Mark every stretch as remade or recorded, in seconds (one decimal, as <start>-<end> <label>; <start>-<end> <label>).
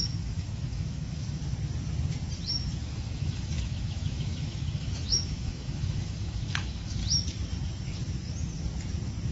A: 0.0-1.4 remade; 1.4-2.8 recorded; 2.8-7.0 remade; 7.0-9.3 recorded